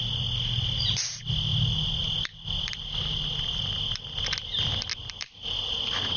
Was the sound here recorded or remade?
recorded